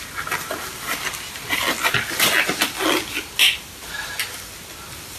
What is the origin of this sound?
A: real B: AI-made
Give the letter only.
A